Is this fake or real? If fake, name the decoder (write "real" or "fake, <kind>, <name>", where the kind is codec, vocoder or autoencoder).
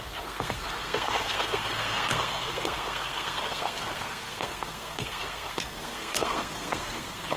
fake, codec, SNAC